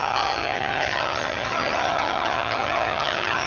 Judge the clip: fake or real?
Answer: fake